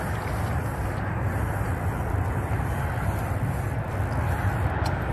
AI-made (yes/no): no